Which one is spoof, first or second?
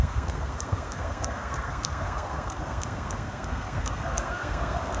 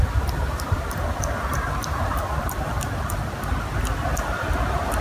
first